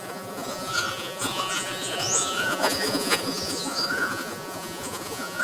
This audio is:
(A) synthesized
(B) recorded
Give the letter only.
A